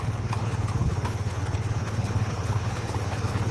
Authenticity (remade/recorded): remade